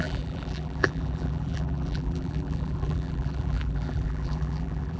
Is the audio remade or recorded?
remade